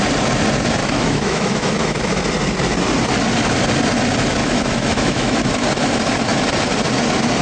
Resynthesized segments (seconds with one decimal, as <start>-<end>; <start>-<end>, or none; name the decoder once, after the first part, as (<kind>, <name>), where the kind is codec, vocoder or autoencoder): 0.8-2.2 (autoencoder, DAC-VAE); 4.4-5.5